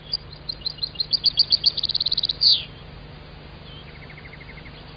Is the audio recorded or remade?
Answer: recorded